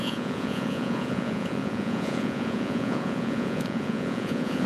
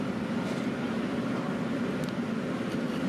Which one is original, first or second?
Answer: second